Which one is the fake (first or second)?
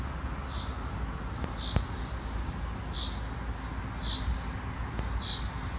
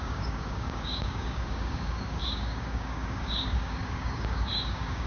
second